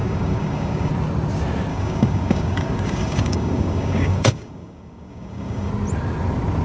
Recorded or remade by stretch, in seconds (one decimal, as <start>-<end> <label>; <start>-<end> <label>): 0.0-0.9 remade; 0.9-1.7 recorded; 1.7-5.7 remade; 5.7-6.6 recorded